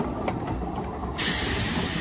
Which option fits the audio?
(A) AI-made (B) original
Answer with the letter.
B